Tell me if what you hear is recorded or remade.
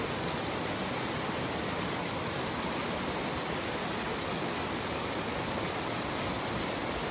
recorded